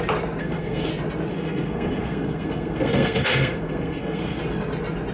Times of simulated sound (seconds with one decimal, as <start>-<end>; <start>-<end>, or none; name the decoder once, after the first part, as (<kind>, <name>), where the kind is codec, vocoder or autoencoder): 0.4-0.9 (codec, SNAC); 1.3-4.4